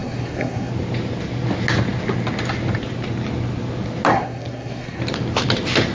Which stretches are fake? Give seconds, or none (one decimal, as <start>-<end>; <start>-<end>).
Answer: 0.0-0.7; 4.1-5.0